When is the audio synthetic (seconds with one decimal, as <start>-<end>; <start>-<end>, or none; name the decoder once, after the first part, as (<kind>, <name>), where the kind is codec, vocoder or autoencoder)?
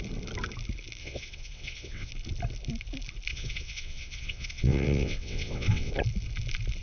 1.0-2.1 (vocoder, WaveNeXt); 3.3-5.9